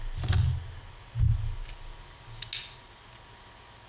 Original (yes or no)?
yes